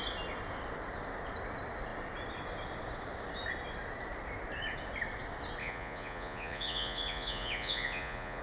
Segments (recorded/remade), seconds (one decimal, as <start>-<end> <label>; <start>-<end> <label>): 0.0-5.6 recorded; 5.6-8.4 remade

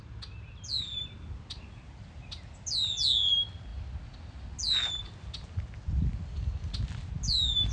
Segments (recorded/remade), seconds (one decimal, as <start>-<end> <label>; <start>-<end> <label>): 0.0-7.7 recorded

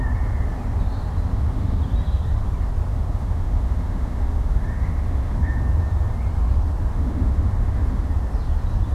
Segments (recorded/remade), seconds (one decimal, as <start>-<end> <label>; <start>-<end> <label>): 0.0-1.3 recorded; 1.3-1.8 remade; 1.8-2.9 recorded; 2.9-5.6 remade; 5.6-6.9 recorded; 6.9-8.1 remade; 8.1-8.9 recorded

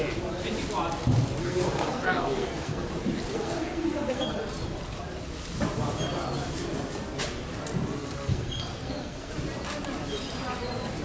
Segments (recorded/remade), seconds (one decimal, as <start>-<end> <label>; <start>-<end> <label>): 0.0-1.4 recorded; 1.4-2.9 remade; 2.9-3.3 recorded; 3.3-4.4 remade; 4.4-8.0 recorded; 8.0-9.3 remade; 9.3-11.0 recorded

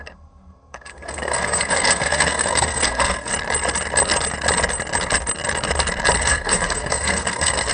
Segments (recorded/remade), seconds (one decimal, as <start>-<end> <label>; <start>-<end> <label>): 0.0-3.3 remade; 3.3-6.2 recorded; 6.2-7.7 remade

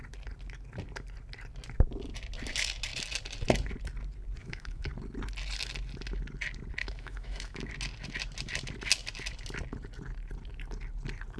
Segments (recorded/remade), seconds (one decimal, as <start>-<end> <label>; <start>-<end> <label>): 0.0-4.4 recorded; 4.4-4.9 remade; 4.9-6.8 recorded; 6.8-7.7 remade; 7.7-11.4 recorded

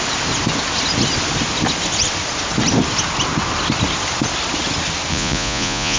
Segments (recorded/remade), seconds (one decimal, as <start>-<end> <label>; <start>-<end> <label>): 0.0-5.1 recorded; 5.1-6.0 remade

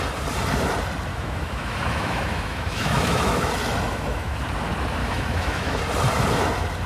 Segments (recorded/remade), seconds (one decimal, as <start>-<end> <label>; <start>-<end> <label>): 0.0-1.1 recorded; 1.1-3.5 remade; 3.5-3.9 recorded; 3.9-4.4 remade; 4.4-5.0 recorded; 5.0-5.8 remade; 5.8-6.9 recorded